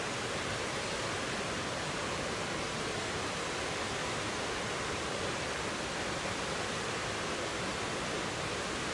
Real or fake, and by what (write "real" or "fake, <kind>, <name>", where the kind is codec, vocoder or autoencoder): real